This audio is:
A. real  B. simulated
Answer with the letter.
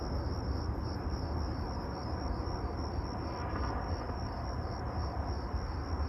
A